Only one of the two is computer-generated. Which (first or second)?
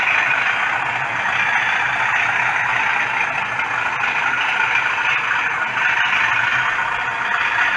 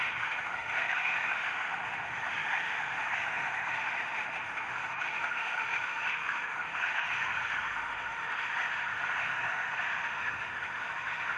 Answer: second